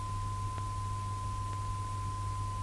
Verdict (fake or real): real